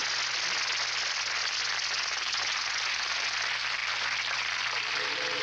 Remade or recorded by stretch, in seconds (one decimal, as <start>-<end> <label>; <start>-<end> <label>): 0.0-5.4 recorded